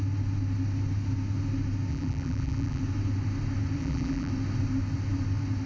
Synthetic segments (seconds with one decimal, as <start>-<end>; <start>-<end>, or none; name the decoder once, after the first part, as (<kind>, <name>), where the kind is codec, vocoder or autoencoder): 1.9-2.8 (vocoder, BigVGAN v2); 3.8-4.3